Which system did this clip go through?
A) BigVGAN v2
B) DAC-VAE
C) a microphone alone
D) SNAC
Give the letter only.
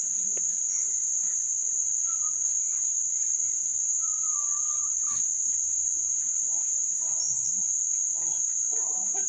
C